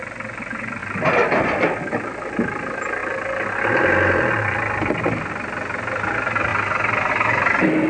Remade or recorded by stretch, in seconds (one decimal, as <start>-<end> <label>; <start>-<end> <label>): 0.0-7.9 recorded